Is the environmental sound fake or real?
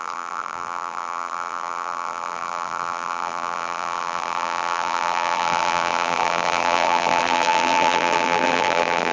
fake